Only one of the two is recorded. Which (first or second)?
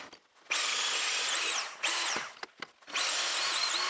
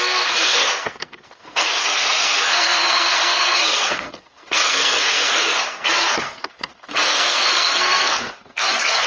first